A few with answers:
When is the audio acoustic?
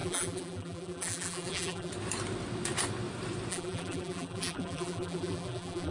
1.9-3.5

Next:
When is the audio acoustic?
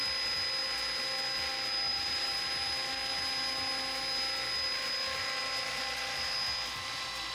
0.0-1.9; 2.4-7.3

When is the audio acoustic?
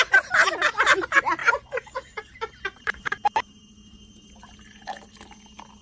0.0-1.4; 4.3-5.8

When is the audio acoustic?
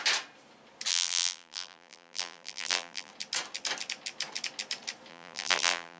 0.0-0.9; 3.1-5.1